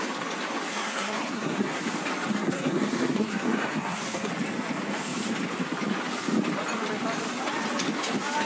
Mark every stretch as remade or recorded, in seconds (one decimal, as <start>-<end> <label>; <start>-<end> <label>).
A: 0.0-0.7 recorded; 0.7-1.8 remade; 1.8-2.3 recorded; 2.3-4.3 remade; 4.3-8.5 recorded